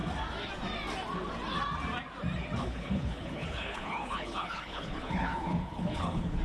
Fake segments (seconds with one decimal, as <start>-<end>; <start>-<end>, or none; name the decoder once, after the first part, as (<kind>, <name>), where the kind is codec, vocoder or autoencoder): 2.6-6.4 (codec, HILCodec)